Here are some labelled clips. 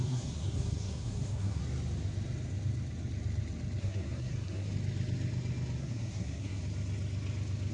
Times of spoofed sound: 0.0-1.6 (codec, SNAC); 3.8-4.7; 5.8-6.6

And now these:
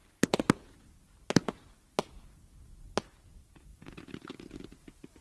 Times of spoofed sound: none

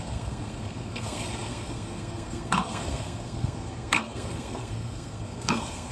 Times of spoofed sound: 0.0-5.9 (codec, SNAC)

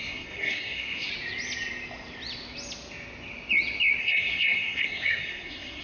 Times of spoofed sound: 0.0-1.1 (codec, SNAC); 4.0-5.8

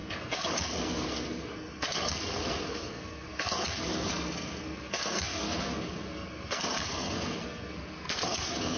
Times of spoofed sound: 0.0-8.8 (codec, SNAC)

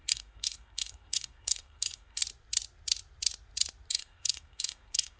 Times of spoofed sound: 0.0-2.2 (codec, SNAC); 3.9-5.2

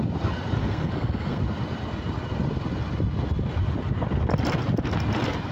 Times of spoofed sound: 0.6-1.4 (codec, SNAC)